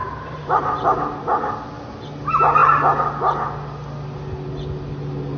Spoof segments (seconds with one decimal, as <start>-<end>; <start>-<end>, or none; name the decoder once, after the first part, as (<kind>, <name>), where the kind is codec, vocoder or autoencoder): 0.0-1.0 (vocoder, BigVGAN v2)